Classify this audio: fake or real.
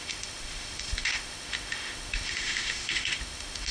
fake